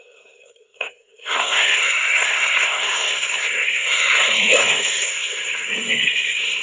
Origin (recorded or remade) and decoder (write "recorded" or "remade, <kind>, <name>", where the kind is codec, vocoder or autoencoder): remade, codec, SNAC